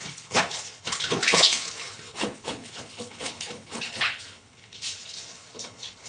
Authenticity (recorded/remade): remade